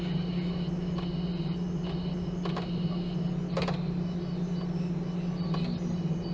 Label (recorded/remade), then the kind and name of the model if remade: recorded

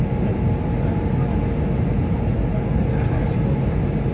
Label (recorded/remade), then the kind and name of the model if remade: recorded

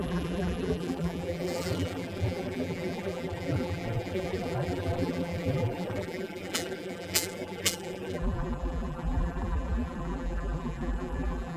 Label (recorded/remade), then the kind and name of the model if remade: remade, vocoder, BigVGAN v2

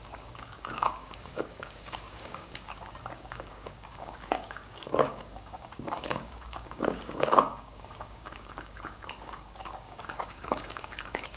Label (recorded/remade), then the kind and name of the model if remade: remade, codec, DAC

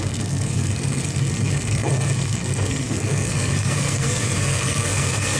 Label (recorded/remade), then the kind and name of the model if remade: remade, codec, SNAC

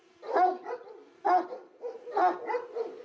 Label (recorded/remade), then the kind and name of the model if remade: recorded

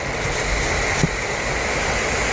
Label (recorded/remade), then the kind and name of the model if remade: recorded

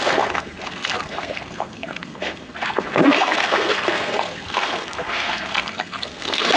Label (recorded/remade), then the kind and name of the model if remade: remade, codec, SNAC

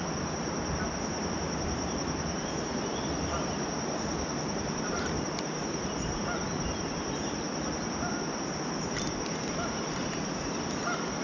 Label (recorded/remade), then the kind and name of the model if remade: recorded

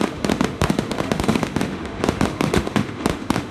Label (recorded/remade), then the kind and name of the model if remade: remade, autoencoder, DAC-VAE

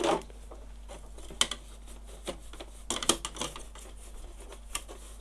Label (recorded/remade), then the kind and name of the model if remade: recorded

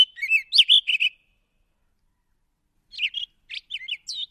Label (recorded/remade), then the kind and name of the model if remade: recorded